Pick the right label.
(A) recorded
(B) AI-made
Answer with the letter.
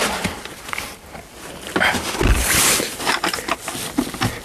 A